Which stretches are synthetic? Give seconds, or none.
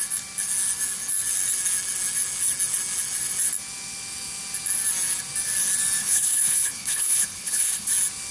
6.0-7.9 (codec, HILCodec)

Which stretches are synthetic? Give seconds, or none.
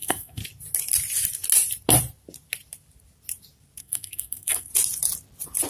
0.0-0.4 (codec, SNAC); 3.8-4.7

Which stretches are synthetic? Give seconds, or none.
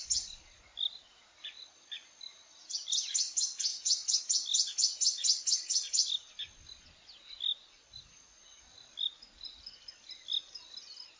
3.7-4.2 (vocoder, Vocos); 7.5-8.6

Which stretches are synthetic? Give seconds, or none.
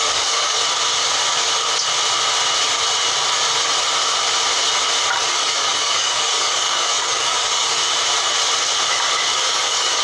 0.0-0.6 (codec, DAC); 5.1-7.8; 9.3-10.0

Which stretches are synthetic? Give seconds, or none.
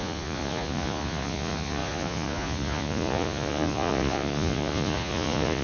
0.0-5.6 (vocoder, Vocos)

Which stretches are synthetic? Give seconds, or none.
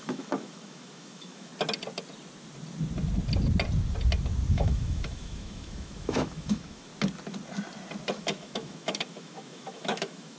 0.0-1.5 (autoencoder, DAC-VAE); 4.5-6.9; 8.1-10.4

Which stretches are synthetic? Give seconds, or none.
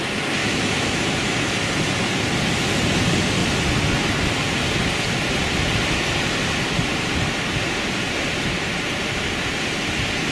0.4-1.4 (autoencoder, DAC-VAE)